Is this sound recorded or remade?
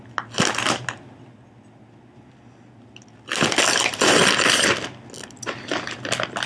recorded